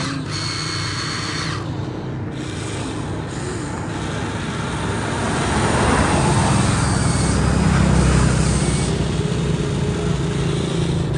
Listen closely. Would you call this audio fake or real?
real